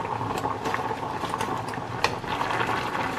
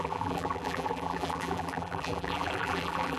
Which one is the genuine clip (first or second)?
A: first